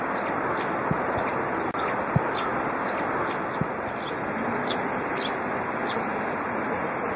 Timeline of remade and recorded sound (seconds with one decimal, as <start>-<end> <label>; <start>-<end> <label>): 0.0-7.2 recorded